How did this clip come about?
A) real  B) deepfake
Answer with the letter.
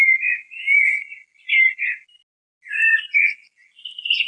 A